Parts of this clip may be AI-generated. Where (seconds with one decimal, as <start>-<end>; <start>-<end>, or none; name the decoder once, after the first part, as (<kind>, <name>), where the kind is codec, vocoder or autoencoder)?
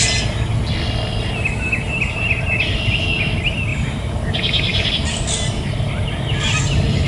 3.7-4.9 (vocoder, BigVGAN v2)